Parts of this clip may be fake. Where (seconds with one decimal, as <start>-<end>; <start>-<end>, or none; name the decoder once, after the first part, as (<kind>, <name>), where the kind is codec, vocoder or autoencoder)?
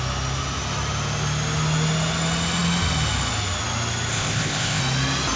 4.1-4.8 (codec, ZipCodec)